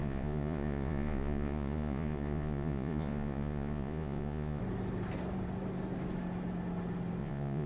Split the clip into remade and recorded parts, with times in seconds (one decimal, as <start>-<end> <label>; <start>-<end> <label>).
0.0-4.6 remade; 4.6-7.2 recorded; 7.2-7.7 remade

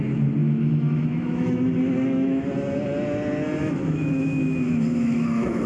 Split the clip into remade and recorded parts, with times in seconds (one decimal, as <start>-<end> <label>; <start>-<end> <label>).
0.0-0.4 recorded; 0.4-2.5 remade; 2.5-3.6 recorded; 3.6-5.7 remade